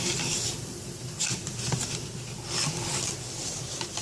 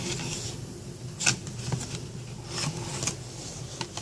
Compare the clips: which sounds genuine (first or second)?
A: second